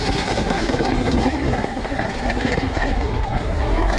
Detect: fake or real fake